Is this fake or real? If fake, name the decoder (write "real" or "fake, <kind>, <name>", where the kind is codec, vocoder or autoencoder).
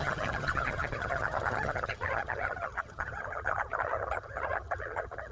fake, vocoder, HiFi-GAN